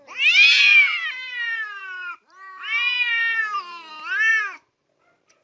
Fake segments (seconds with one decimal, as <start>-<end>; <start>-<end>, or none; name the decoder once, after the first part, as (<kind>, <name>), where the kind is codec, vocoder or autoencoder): 0.7-3.9 (vocoder, BigVGAN v2); 4.3-5.4